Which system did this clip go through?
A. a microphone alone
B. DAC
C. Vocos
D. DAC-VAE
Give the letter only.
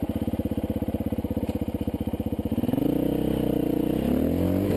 A